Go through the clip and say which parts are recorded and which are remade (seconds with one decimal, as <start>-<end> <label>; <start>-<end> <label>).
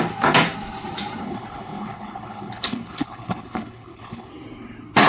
0.0-1.2 recorded; 1.2-4.3 remade; 4.3-5.1 recorded